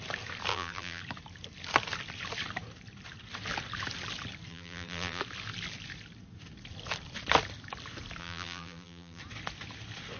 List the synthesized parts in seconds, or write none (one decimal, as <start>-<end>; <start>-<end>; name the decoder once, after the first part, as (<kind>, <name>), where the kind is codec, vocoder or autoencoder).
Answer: 0.5-1.0 (vocoder, BigVGAN v2); 4.5-5.2; 8.2-9.2